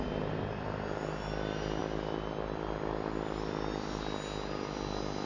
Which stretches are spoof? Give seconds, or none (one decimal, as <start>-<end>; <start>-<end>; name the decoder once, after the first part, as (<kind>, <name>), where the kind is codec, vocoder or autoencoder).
none